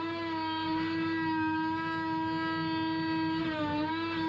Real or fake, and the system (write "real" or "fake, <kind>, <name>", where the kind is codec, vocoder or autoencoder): real